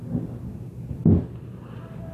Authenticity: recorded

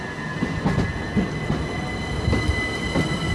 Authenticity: recorded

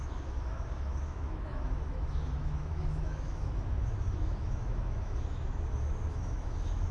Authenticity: remade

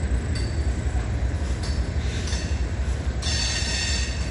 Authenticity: recorded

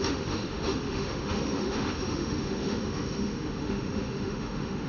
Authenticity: remade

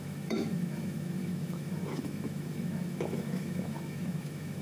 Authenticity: remade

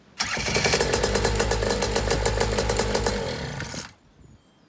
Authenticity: recorded